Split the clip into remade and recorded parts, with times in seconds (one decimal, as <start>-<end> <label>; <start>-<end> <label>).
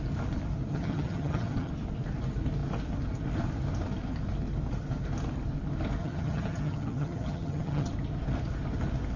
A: 0.0-0.7 recorded; 0.7-1.7 remade; 1.7-6.0 recorded; 6.0-7.9 remade; 7.9-9.2 recorded